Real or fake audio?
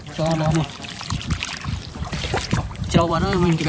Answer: fake